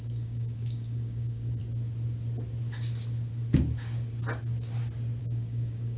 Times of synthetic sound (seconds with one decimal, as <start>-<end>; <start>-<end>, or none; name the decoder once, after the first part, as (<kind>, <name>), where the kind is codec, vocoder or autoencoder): 0.0-1.6 (codec, DAC); 5.2-6.0